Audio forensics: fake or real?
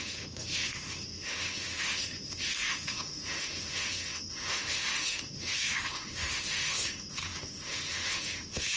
fake